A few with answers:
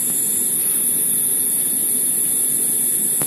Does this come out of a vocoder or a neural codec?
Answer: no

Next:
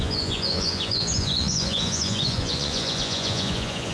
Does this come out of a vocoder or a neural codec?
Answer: yes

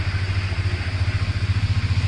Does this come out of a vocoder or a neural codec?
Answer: no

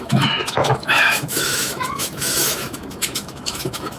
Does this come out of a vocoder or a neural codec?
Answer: yes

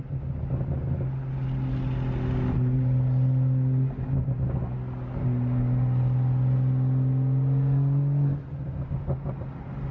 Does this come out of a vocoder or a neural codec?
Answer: no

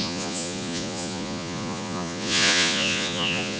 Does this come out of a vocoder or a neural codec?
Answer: yes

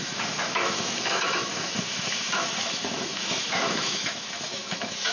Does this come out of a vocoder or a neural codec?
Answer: yes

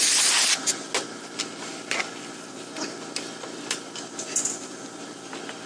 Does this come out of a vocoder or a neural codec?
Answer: no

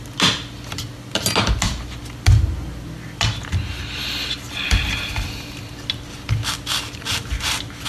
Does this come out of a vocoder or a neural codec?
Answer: no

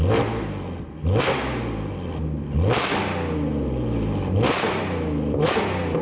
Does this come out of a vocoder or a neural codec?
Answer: no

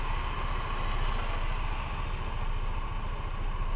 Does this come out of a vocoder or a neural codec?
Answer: no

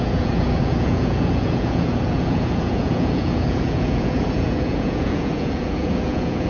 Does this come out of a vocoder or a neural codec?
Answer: yes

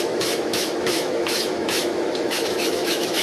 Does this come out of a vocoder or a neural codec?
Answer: yes